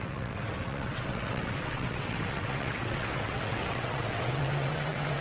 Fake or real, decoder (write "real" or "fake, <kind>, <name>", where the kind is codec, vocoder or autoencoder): fake, vocoder, WaveNeXt